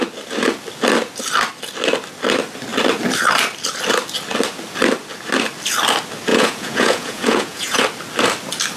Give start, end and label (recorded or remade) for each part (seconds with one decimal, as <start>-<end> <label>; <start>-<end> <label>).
0.0-6.3 recorded; 6.3-7.8 remade; 7.8-8.8 recorded